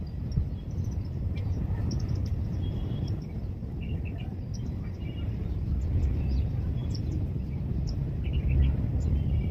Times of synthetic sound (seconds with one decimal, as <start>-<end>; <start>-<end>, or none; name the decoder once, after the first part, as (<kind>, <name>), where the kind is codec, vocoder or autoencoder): 6.8-8.2 (vocoder, BigVGAN v2)